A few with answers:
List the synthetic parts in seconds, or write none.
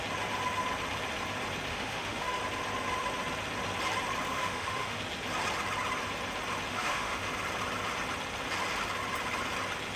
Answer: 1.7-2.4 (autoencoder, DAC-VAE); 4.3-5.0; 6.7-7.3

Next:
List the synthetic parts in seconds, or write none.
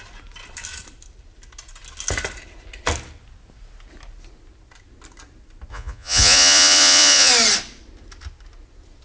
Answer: 5.7-7.3 (vocoder, Vocos)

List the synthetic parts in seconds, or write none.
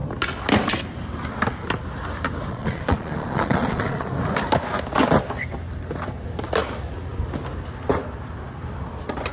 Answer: 2.5-4.1 (vocoder, Vocos)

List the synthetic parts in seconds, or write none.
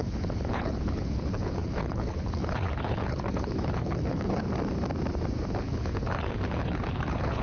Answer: 0.0-4.4 (codec, HILCodec); 5.6-7.4